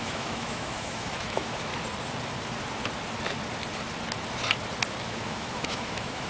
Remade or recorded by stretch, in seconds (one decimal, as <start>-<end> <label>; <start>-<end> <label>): 0.0-1.7 remade; 1.7-5.0 recorded; 5.0-6.3 remade